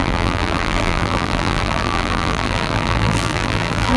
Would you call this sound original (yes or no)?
no